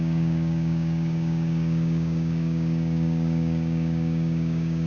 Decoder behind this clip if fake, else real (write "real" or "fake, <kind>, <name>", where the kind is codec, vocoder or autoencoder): fake, codec, DAC